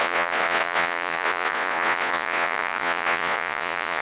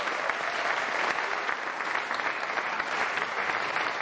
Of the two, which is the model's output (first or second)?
first